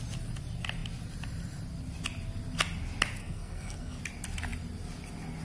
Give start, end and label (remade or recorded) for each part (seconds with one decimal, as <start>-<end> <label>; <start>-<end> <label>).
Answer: 0.0-3.2 recorded; 3.2-4.0 remade; 4.0-5.4 recorded